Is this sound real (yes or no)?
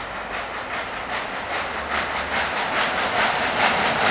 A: yes